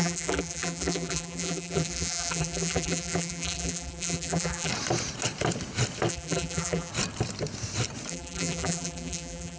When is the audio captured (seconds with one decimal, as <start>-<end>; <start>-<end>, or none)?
4.7-6.1; 6.9-8.1